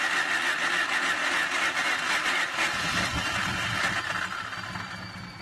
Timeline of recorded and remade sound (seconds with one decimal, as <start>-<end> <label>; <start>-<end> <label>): 0.0-1.2 recorded; 1.2-3.8 remade; 3.8-5.4 recorded